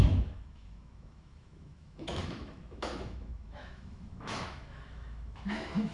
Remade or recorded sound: remade